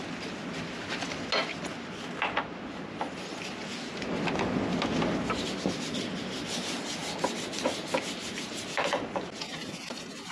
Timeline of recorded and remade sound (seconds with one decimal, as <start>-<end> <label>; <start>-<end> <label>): 0.0-10.3 recorded